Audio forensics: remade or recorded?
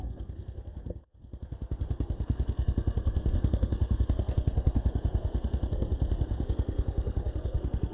remade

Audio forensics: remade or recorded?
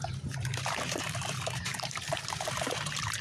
remade